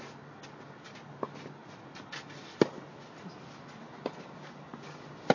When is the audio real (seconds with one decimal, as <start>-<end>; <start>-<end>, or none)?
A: 0.0-5.3